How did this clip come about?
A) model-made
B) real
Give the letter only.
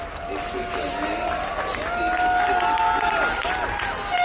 B